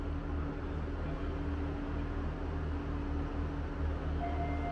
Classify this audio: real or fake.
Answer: real